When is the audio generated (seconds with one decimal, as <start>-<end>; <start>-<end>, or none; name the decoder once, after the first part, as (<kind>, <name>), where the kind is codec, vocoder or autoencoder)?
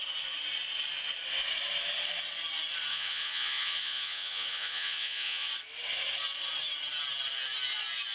2.9-5.5 (vocoder, Vocos)